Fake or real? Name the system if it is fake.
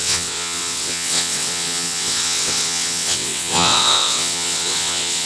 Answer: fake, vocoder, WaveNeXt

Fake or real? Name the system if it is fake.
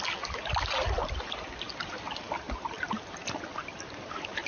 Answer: real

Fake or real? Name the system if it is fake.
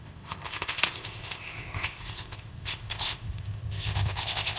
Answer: fake, codec, ZipCodec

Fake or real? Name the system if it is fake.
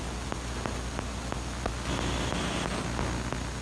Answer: real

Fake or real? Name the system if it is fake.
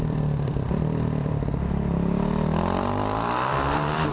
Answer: fake, vocoder, BigVGAN v2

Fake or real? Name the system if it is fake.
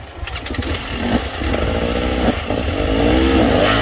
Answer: real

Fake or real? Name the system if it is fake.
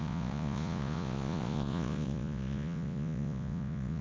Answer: fake, vocoder, Vocos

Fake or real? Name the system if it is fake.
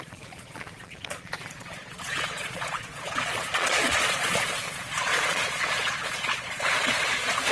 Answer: fake, vocoder, Vocos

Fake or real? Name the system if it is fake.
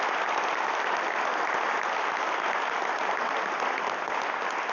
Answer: real